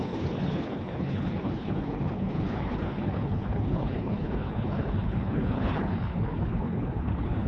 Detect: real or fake fake